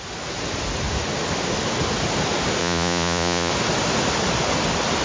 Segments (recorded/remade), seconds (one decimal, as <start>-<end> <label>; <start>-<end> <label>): 0.0-2.6 recorded; 2.6-3.5 remade; 3.5-5.0 recorded

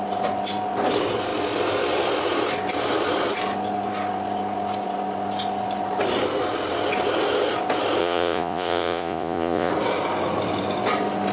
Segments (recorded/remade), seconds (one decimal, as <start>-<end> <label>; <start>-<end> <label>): 0.0-8.0 recorded; 8.0-9.7 remade; 9.7-11.3 recorded

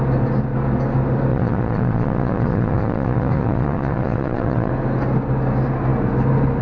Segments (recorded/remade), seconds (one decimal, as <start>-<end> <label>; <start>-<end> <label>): 0.0-1.3 recorded; 1.3-4.7 remade; 4.7-6.6 recorded

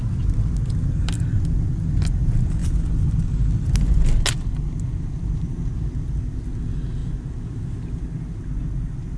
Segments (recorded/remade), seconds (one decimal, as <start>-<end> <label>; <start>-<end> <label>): 0.0-9.2 recorded

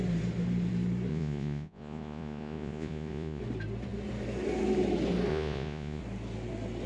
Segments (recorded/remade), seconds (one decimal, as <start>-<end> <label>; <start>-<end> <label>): 0.0-1.1 recorded; 1.1-3.4 remade; 3.4-5.3 recorded; 5.3-6.0 remade; 6.0-6.9 recorded

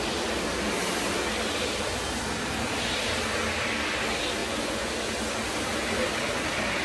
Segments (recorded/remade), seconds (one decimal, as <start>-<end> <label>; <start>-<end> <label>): 0.0-4.4 recorded; 4.4-4.9 remade; 4.9-6.8 recorded

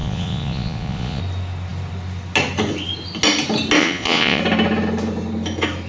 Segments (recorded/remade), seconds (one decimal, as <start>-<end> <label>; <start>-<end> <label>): 0.0-1.2 remade; 1.2-3.8 recorded; 3.8-4.4 remade; 4.4-5.9 recorded